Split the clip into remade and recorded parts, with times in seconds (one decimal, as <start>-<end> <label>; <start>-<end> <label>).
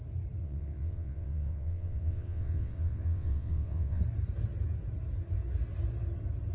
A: 0.0-0.4 recorded; 0.4-4.0 remade; 4.0-6.5 recorded